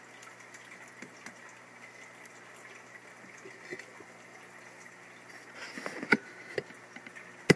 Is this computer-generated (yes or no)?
no